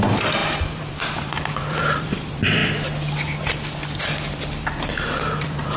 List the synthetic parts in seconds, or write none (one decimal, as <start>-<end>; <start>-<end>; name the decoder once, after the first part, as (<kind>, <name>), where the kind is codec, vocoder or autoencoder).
0.0-2.6 (vocoder, BigVGAN v2); 4.3-5.8